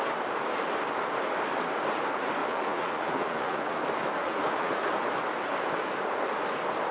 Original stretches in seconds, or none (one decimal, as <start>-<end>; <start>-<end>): 0.0-2.4; 3.8-4.2; 4.7-6.9